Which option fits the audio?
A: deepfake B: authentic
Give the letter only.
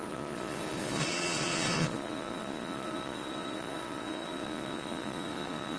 A